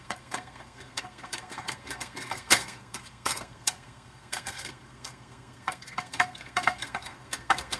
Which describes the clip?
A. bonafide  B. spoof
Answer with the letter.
B